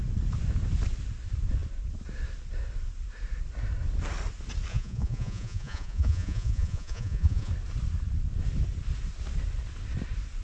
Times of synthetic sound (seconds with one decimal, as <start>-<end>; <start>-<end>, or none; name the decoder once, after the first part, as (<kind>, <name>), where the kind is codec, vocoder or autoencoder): 4.7-7.5 (vocoder, Vocos)